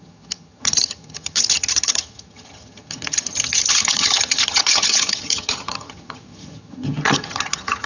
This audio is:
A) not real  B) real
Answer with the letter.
A